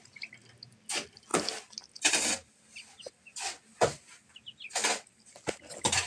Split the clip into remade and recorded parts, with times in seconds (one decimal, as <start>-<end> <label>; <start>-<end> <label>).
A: 0.0-6.1 recorded